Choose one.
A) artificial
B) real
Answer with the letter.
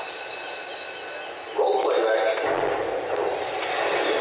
B